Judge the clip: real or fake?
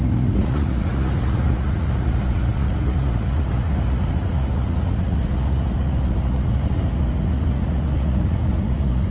fake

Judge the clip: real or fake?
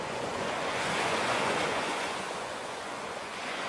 fake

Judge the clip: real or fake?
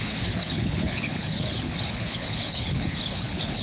fake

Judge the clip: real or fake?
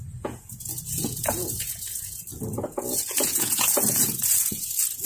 fake